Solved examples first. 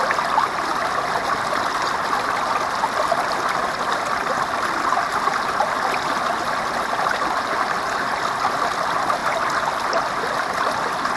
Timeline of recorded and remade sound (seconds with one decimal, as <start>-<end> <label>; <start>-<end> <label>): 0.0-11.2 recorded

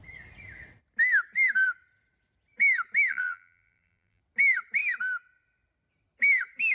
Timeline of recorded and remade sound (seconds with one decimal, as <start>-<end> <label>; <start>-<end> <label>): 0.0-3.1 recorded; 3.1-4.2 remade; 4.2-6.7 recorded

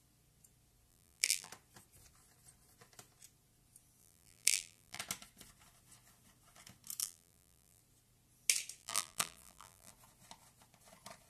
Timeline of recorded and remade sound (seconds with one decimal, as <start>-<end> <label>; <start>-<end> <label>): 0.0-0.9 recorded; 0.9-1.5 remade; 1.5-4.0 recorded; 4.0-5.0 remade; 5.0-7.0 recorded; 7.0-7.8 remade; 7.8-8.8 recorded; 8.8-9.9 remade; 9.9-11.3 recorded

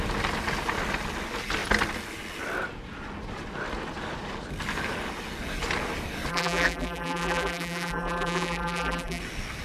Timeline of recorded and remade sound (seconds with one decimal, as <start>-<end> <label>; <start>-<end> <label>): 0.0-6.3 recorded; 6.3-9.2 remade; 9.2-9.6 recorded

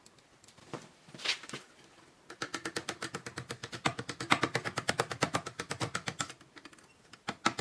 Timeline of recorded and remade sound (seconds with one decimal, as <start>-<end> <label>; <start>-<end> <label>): 0.0-7.6 recorded